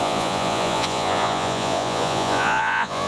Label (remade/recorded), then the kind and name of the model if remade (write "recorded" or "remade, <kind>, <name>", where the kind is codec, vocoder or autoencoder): remade, vocoder, Vocos